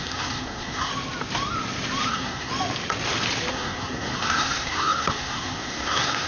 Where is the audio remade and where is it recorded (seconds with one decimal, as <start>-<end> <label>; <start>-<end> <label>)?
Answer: 0.0-0.9 remade; 0.9-2.1 recorded; 2.1-2.5 remade; 2.5-3.5 recorded; 3.5-6.3 remade